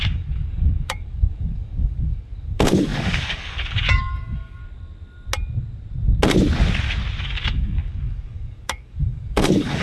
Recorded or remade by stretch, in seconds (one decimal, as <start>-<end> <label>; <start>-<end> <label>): 0.0-4.6 remade; 4.6-7.2 recorded; 7.2-9.8 remade